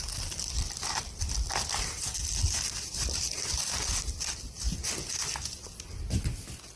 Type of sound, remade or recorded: recorded